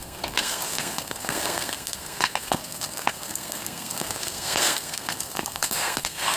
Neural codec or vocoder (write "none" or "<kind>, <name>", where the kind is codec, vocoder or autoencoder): codec, SNAC